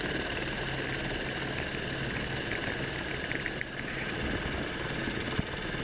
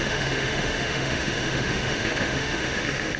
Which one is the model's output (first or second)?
second